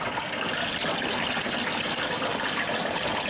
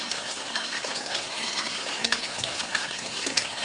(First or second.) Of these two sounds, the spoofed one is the second